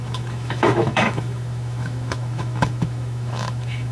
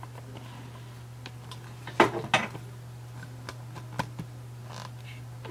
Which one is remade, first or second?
first